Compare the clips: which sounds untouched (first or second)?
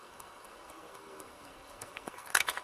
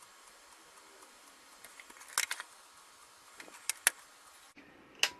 second